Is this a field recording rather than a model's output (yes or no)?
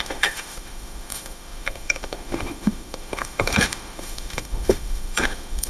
no